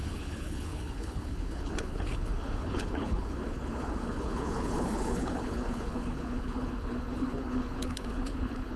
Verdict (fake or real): fake